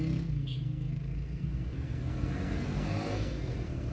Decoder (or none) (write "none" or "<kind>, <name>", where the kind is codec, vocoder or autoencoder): codec, SNAC